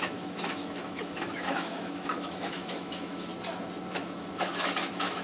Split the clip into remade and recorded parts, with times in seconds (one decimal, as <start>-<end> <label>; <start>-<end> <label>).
0.0-3.3 remade; 3.3-3.9 recorded; 3.9-5.2 remade